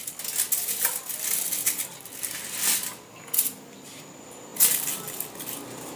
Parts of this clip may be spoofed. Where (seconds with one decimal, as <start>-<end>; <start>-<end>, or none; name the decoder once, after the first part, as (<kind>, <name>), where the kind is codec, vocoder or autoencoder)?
none